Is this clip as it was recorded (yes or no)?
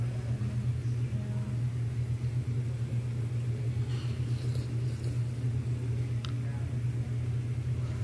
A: yes